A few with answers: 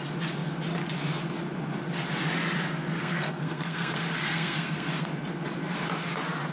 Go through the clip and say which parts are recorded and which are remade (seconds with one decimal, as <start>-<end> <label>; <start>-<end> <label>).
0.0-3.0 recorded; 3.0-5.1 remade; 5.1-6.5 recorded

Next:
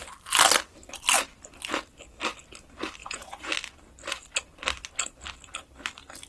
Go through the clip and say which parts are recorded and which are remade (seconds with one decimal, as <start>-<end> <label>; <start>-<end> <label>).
0.0-3.0 recorded; 3.0-3.5 remade; 3.5-6.3 recorded

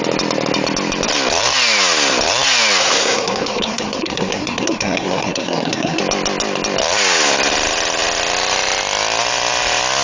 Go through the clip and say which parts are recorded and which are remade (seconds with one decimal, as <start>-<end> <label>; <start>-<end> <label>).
0.0-2.8 recorded; 2.8-6.0 remade; 6.0-10.0 recorded

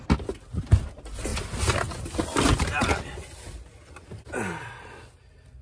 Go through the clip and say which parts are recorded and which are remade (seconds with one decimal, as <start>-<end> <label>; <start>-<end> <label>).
0.0-5.6 recorded